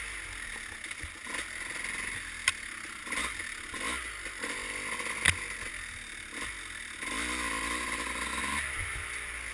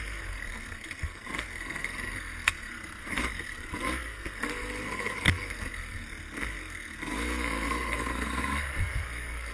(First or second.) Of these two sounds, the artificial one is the second